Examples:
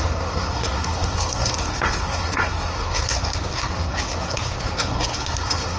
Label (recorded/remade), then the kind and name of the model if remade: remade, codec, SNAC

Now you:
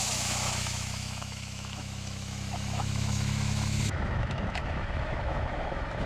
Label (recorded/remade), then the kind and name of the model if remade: remade, autoencoder, DAC-VAE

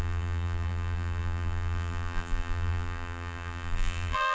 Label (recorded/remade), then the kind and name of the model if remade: remade, vocoder, BigVGAN v2